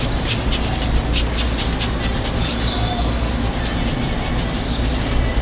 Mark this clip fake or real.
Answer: real